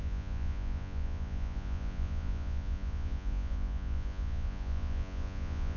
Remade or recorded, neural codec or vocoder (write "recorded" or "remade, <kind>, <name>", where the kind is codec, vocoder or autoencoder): remade, vocoder, Vocos